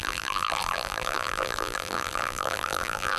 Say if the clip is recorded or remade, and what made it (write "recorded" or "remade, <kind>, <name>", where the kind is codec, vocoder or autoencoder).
remade, vocoder, BigVGAN v2